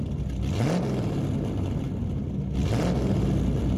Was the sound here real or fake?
real